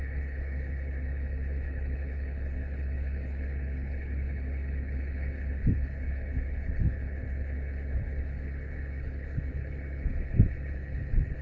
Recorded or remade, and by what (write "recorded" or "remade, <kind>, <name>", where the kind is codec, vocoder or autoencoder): remade, codec, HILCodec